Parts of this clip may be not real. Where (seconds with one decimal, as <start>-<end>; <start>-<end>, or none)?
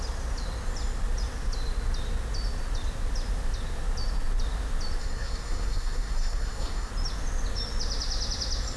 5.0-6.9